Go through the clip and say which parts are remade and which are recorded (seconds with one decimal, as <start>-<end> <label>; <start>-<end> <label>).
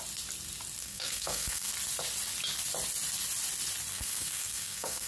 0.0-0.8 recorded; 0.8-1.7 remade; 1.7-3.9 recorded; 3.9-5.1 remade